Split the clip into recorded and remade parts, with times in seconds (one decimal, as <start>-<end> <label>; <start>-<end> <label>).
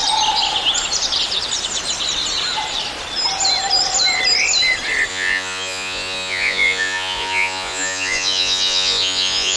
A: 0.0-5.1 recorded; 5.1-9.6 remade